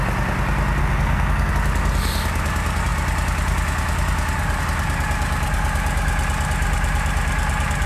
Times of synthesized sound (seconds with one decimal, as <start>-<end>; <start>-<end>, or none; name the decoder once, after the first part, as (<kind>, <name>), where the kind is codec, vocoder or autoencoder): 0.8-1.5 (codec, SNAC)